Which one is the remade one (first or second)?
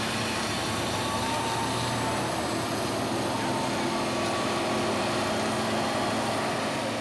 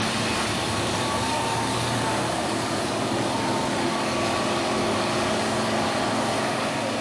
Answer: second